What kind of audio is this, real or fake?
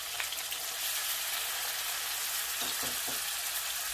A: real